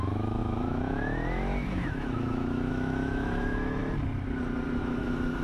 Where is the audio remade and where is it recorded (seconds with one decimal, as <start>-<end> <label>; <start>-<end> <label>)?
0.0-3.8 remade; 3.8-4.8 recorded; 4.8-5.4 remade